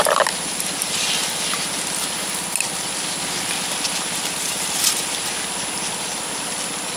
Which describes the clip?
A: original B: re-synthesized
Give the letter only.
A